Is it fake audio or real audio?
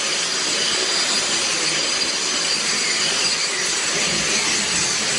real